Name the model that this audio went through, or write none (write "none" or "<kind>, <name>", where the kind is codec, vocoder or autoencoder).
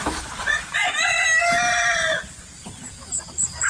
vocoder, BigVGAN v2